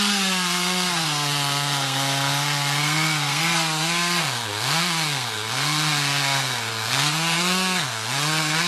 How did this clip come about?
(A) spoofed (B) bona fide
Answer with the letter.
A